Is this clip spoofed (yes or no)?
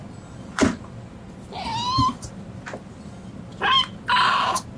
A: no